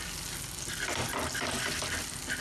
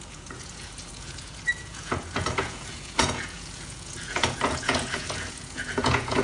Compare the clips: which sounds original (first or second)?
first